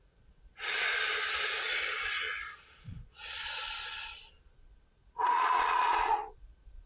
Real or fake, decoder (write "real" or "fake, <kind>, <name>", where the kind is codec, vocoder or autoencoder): fake, vocoder, Vocos